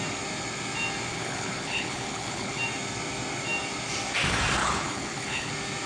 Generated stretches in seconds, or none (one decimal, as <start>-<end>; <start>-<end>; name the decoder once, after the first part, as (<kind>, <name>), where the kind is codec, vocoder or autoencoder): 1.1-2.6 (codec, HILCodec); 4.6-5.5